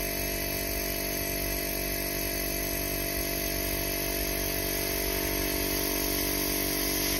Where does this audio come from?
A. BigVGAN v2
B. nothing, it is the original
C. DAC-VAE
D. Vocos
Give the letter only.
B